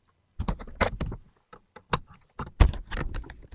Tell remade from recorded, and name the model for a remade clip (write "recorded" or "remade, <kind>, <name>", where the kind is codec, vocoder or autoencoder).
recorded